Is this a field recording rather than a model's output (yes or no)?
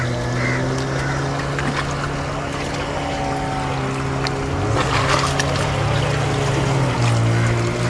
yes